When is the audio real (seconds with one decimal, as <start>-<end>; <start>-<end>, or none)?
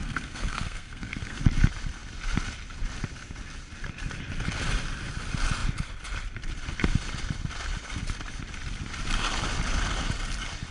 1.4-10.7